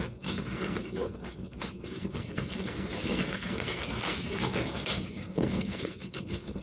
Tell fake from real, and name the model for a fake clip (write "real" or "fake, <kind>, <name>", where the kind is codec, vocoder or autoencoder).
fake, codec, SNAC